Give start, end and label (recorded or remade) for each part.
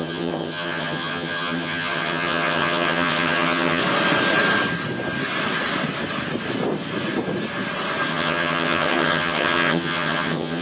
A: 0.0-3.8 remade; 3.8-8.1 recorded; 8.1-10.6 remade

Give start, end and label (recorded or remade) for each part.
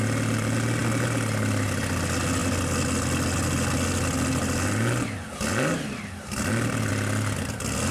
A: 0.0-7.9 recorded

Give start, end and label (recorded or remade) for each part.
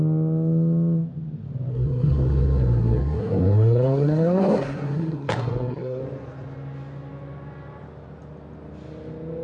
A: 0.0-1.7 recorded; 1.7-6.0 remade; 6.0-9.4 recorded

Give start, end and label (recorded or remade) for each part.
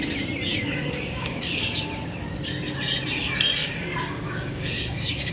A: 0.0-0.5 recorded; 0.5-2.2 remade; 2.2-3.6 recorded; 3.6-5.3 remade